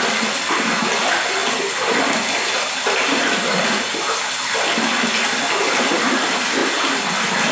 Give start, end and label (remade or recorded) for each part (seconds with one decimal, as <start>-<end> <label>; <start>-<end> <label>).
0.0-7.5 recorded